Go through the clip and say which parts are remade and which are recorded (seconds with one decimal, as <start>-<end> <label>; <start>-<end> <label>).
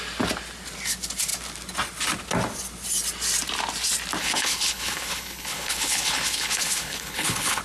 0.0-4.2 recorded; 4.2-7.6 remade